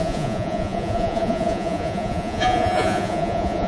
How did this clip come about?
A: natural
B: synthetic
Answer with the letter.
B